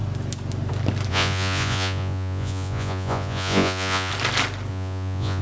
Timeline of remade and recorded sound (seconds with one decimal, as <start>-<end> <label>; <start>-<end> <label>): 0.0-1.1 recorded; 1.1-4.1 remade; 4.1-4.7 recorded; 4.7-5.4 remade